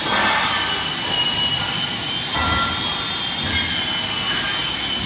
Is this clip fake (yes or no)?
no